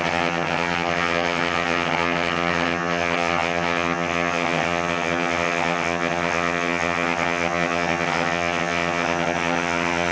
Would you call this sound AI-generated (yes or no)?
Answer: yes